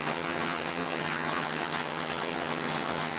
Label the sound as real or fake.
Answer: fake